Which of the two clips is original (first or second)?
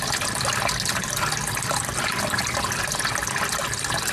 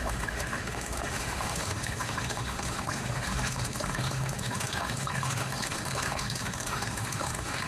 first